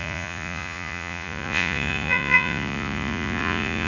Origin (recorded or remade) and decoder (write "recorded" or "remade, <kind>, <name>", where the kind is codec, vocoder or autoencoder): remade, vocoder, Vocos